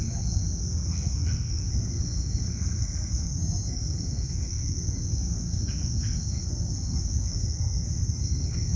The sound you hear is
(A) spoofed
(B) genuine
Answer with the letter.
A